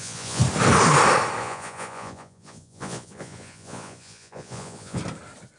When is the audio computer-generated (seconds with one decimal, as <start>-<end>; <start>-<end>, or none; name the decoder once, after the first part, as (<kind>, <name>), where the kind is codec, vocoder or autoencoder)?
0.0-0.4 (vocoder, Vocos); 1.4-5.0